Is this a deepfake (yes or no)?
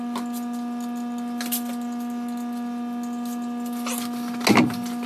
no